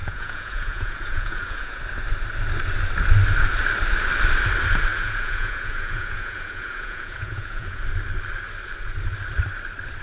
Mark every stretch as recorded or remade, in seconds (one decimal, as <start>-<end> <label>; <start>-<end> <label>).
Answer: 0.0-1.8 remade; 1.8-4.9 recorded; 4.9-7.8 remade; 7.8-10.0 recorded